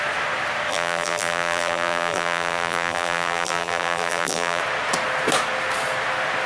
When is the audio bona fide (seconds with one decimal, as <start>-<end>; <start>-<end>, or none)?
0.0-0.7; 4.6-6.5